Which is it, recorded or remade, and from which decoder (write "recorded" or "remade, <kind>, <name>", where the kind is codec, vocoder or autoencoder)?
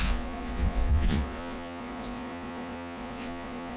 remade, vocoder, Vocos